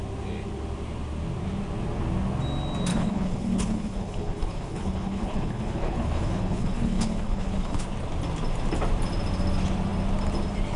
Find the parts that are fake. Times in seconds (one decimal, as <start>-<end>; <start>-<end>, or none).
2.9-7.8